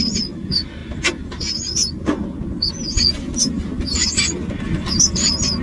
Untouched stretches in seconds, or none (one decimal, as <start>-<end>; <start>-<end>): 0.0-5.6